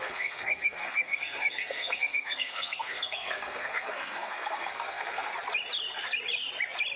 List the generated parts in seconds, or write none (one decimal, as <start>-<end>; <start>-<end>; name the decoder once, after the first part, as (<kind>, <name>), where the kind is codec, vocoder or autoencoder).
0.0-5.3 (codec, SNAC)